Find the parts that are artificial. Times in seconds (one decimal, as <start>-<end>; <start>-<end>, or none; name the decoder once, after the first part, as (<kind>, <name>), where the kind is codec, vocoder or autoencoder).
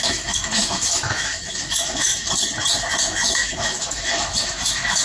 0.0-2.1 (autoencoder, DAC-VAE); 3.0-5.0